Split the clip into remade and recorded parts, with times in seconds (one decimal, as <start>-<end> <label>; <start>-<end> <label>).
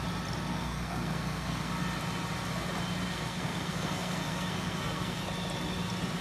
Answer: 0.0-0.5 recorded; 0.5-1.7 remade; 1.7-3.1 recorded; 3.1-5.2 remade; 5.2-6.2 recorded